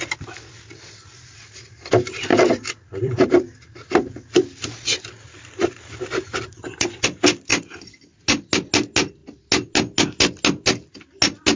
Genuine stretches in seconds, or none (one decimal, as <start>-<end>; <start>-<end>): 0.0-2.3; 7.0-7.5; 8.2-11.6